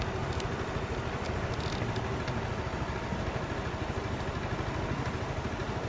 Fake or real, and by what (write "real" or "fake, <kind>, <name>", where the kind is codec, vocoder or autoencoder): real